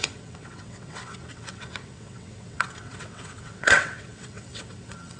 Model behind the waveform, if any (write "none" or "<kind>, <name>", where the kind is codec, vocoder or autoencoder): vocoder, WaveNeXt